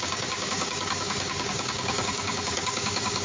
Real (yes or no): no